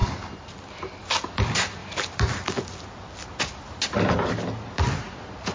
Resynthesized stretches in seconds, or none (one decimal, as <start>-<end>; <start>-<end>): none